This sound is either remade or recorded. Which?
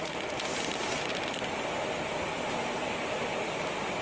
recorded